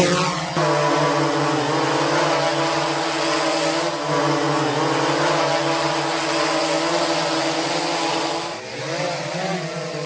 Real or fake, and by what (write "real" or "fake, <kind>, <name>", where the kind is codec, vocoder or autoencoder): real